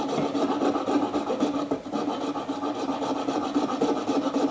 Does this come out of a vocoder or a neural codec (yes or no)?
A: no